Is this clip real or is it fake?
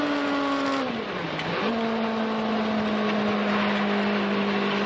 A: real